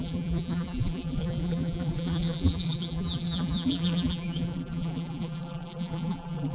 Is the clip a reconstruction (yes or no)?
yes